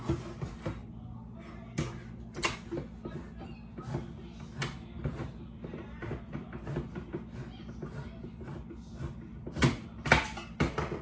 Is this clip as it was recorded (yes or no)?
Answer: yes